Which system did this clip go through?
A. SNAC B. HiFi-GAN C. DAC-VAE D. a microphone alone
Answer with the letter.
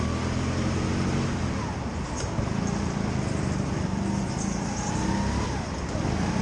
D